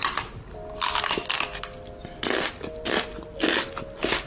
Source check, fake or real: real